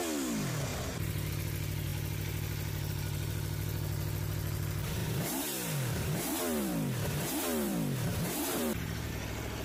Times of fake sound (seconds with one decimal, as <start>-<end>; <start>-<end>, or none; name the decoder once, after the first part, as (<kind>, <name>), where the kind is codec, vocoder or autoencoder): 0.7-1.3 (vocoder, BigVGAN v2); 5.0-9.1